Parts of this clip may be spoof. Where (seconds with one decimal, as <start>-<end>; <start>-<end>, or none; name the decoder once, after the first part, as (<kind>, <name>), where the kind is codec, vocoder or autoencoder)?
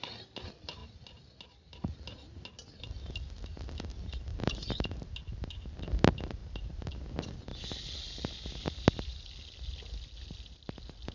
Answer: 4.3-5.1 (vocoder, BigVGAN v2); 6.4-7.0